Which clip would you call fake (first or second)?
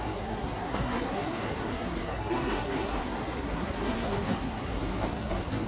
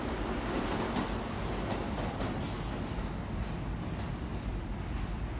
first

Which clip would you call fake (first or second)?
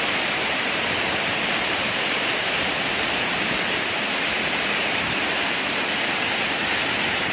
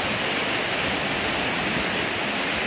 first